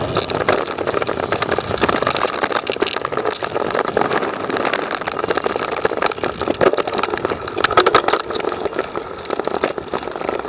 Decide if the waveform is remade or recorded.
recorded